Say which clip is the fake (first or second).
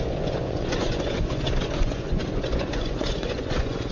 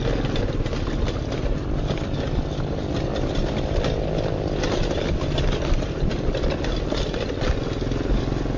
first